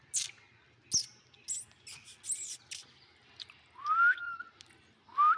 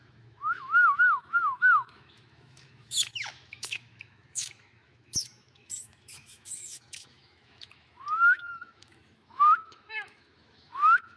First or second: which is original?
first